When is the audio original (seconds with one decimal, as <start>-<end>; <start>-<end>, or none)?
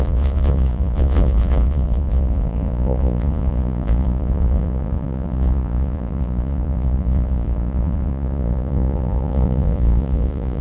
none